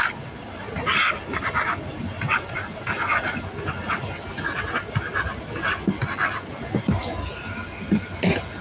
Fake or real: real